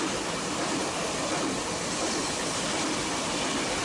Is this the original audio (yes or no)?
yes